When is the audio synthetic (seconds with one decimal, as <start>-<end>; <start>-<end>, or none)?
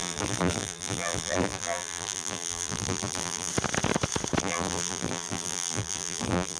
0.0-3.5; 4.4-6.6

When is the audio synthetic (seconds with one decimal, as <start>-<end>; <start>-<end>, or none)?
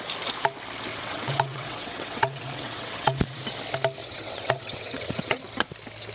0.9-3.4; 4.0-5.4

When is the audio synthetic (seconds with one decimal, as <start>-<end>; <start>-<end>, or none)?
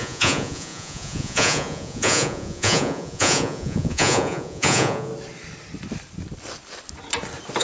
0.0-5.1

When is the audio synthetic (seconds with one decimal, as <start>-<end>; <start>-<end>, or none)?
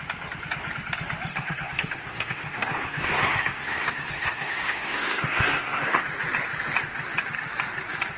1.3-6.0